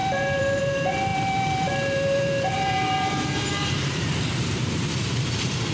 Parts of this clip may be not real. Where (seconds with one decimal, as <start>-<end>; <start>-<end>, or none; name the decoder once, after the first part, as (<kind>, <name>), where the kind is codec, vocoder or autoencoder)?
0.0-5.7 (vocoder, BigVGAN v2)